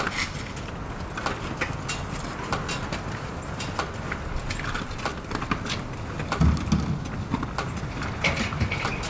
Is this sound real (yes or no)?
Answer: yes